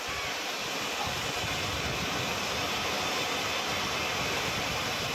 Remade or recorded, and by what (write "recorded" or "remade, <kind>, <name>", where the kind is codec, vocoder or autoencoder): recorded